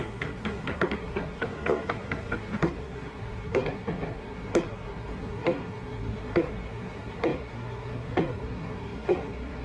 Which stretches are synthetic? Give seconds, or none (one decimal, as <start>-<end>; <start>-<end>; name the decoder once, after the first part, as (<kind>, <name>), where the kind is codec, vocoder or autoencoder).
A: 0.0-9.6 (codec, SNAC)